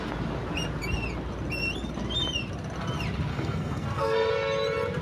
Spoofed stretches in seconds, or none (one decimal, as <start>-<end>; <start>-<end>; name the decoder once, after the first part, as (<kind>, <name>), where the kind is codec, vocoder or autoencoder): 3.3-4.3 (codec, SNAC)